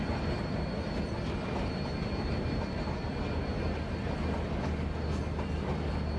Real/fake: real